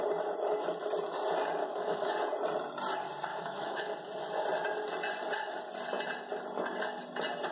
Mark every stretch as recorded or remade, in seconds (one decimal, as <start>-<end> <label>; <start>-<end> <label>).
0.0-1.6 recorded; 1.6-2.1 remade; 2.1-3.3 recorded; 3.3-3.9 remade; 3.9-7.5 recorded